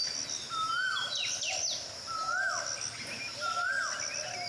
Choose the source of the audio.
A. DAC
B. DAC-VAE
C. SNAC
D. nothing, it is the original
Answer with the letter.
D